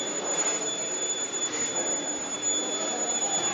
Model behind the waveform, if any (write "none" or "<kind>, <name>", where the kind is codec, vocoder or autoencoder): none